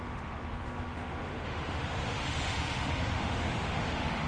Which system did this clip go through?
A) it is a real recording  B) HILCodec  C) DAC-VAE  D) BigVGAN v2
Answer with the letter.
C